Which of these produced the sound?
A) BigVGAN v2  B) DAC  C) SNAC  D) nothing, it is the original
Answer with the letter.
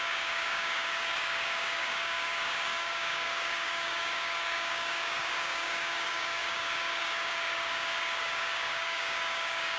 B